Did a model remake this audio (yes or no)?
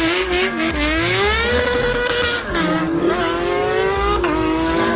yes